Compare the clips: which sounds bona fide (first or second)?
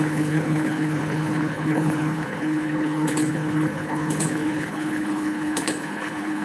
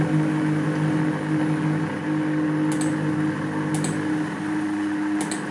second